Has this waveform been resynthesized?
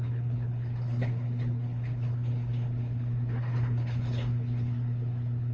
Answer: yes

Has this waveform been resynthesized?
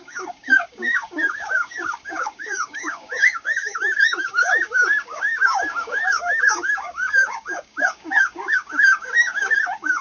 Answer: yes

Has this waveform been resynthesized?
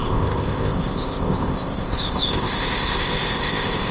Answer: yes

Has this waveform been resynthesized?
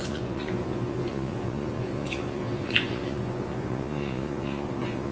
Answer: yes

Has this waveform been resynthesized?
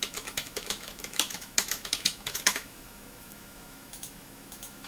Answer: yes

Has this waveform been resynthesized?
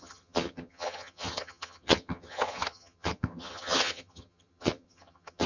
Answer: yes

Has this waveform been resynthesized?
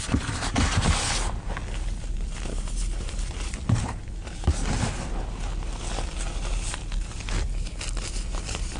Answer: no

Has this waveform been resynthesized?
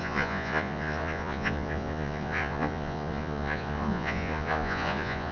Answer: yes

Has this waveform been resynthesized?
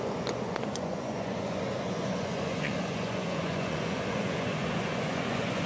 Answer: yes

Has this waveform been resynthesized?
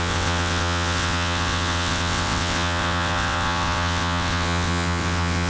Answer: yes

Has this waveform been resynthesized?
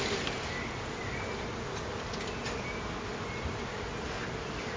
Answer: no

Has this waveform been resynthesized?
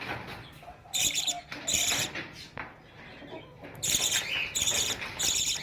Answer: no